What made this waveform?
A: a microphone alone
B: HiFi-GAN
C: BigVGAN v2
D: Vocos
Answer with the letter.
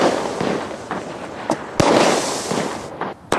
A